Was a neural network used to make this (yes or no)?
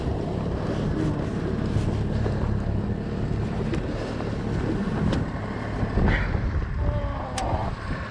no